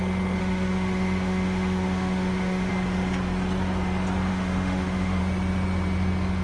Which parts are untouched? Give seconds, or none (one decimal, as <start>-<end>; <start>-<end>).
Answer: 0.0-0.4; 2.7-4.3; 5.2-6.4